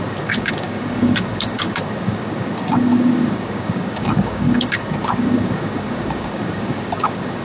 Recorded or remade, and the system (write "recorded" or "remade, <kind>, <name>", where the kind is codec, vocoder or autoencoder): remade, codec, DAC